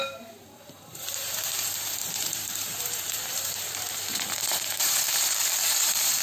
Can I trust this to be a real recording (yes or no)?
no